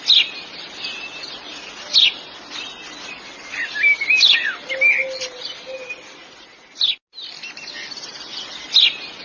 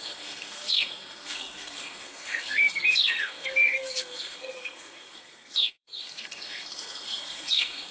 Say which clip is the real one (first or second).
first